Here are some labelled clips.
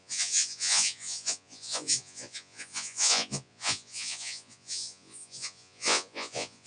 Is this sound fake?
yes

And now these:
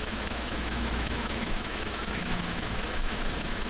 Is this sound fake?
yes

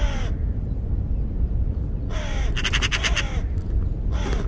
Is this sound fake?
no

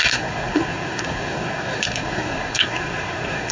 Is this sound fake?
yes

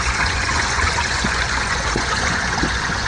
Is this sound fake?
yes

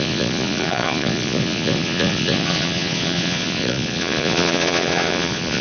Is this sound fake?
yes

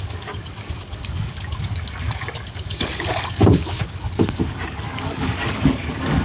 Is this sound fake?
yes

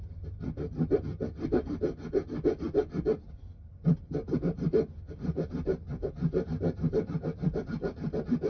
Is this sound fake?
no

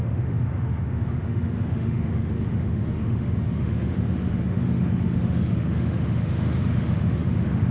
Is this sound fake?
yes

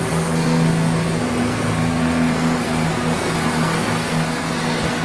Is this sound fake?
yes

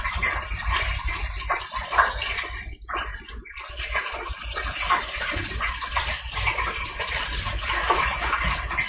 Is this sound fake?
no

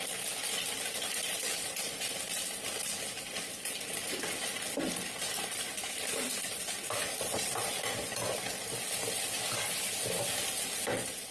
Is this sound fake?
yes